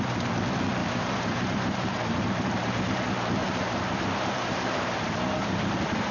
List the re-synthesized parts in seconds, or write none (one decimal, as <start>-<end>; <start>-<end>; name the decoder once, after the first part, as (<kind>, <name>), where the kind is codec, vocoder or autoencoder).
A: 0.8-2.7 (vocoder, BigVGAN v2); 3.4-6.1